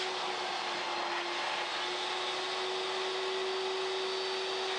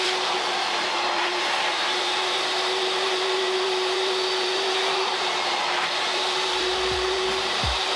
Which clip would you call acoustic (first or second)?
first